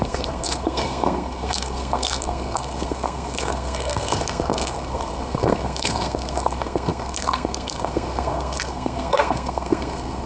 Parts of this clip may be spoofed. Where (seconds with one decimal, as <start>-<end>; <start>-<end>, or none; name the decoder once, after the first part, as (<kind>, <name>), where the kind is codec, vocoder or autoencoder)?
0.0-10.3 (codec, SNAC)